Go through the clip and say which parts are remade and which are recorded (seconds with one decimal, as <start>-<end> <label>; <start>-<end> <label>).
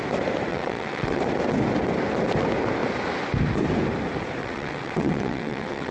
0.0-0.5 recorded; 0.5-1.2 remade; 1.2-4.4 recorded; 4.4-5.9 remade